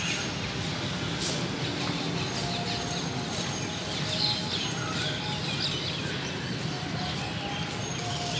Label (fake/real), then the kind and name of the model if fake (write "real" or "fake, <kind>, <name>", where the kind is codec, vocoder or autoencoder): real